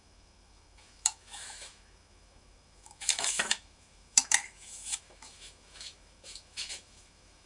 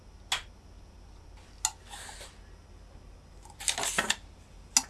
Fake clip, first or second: first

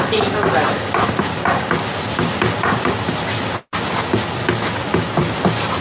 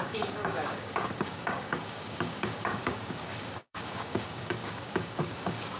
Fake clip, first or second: second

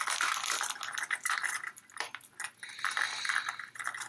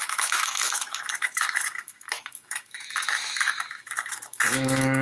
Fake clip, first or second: second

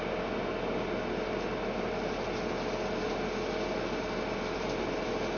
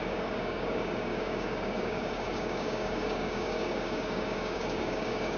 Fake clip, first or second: second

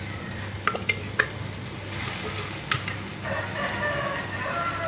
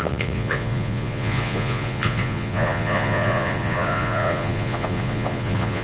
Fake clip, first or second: second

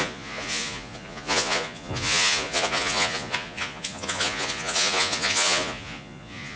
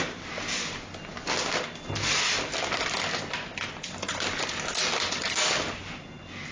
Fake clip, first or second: first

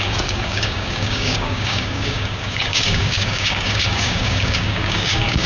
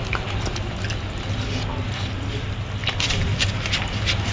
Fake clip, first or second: first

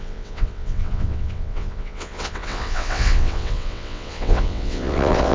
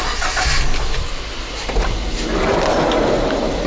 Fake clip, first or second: first